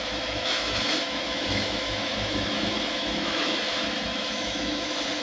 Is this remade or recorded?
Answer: remade